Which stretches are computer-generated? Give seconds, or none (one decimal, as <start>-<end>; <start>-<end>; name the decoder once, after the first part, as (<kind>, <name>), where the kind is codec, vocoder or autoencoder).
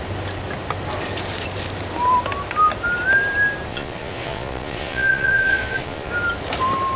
3.7-6.1 (vocoder, Vocos)